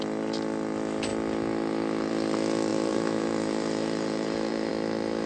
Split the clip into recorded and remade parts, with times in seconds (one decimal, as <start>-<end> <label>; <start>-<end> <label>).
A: 0.0-2.7 recorded; 2.7-4.7 remade; 4.7-5.3 recorded